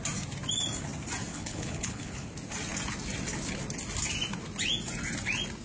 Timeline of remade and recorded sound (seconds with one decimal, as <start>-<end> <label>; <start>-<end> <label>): 0.0-1.3 recorded; 1.3-2.3 remade; 2.3-5.6 recorded